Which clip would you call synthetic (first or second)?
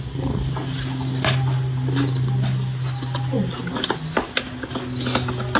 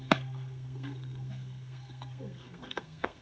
second